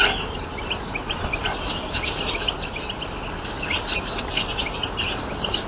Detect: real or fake real